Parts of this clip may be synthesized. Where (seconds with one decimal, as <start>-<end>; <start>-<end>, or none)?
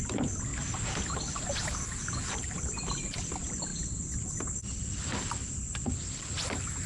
none